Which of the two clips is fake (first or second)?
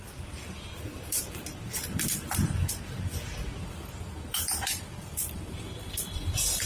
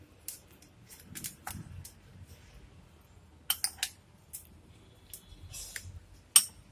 first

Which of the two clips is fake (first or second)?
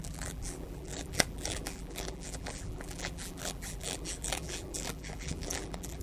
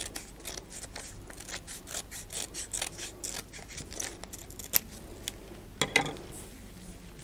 first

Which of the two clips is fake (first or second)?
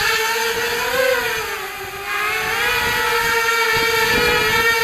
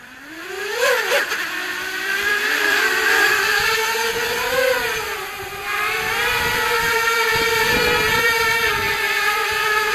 second